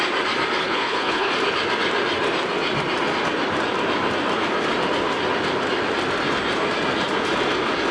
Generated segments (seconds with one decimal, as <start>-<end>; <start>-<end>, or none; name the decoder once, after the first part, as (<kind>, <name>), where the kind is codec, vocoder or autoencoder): 0.6-1.3 (codec, HILCodec)